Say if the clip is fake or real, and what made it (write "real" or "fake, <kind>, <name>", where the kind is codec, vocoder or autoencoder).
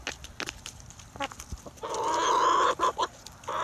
real